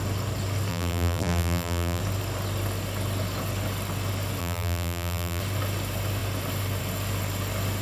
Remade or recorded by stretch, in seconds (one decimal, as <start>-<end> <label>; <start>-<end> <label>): 0.0-0.7 recorded; 0.7-2.0 remade; 2.0-4.4 recorded; 4.4-5.4 remade; 5.4-7.8 recorded